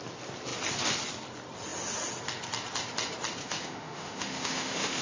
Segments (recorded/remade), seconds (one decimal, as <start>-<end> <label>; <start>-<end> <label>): 0.0-3.4 recorded; 3.4-5.0 remade